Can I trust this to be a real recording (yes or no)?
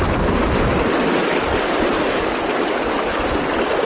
no